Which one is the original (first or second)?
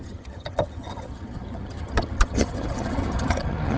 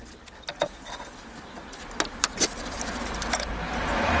second